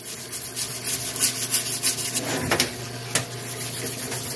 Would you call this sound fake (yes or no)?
no